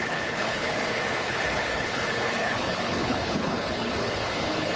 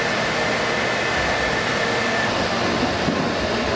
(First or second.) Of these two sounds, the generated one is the first